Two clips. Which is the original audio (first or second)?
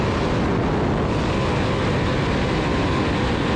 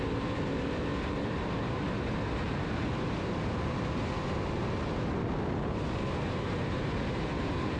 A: first